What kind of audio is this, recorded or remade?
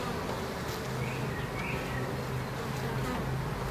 recorded